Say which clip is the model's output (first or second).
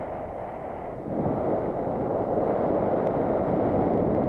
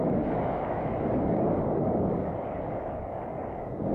second